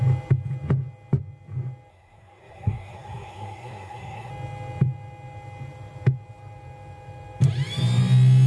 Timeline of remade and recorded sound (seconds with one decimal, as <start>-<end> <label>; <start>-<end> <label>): 0.0-1.9 recorded; 1.9-4.3 remade; 4.3-8.5 recorded

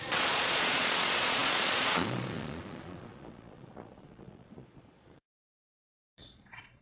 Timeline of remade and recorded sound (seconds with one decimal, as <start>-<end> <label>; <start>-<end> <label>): 0.0-6.8 remade

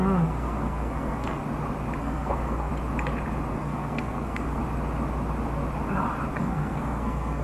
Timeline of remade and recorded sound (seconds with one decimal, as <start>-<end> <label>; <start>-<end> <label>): 0.0-1.4 remade; 1.4-2.0 recorded; 2.0-2.7 remade; 2.7-3.5 recorded; 3.5-4.6 remade; 4.6-6.4 recorded; 6.4-7.4 remade

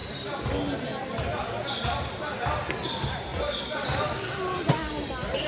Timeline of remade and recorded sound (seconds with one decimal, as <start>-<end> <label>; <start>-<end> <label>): 0.0-5.5 recorded

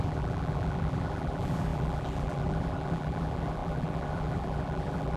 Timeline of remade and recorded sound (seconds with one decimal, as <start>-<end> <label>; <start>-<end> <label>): 0.0-5.2 remade

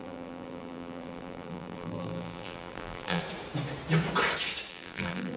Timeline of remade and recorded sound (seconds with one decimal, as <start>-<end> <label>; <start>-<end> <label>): 0.0-3.2 remade; 3.2-4.7 recorded; 4.7-5.4 remade

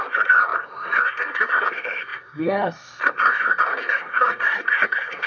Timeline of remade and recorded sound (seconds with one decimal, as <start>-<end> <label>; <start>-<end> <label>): 0.0-5.3 remade